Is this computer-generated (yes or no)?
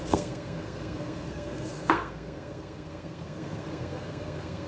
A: yes